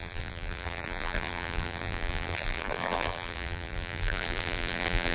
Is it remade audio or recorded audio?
remade